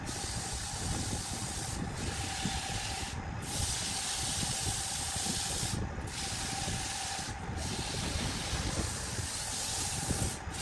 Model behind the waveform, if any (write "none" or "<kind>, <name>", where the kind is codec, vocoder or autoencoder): none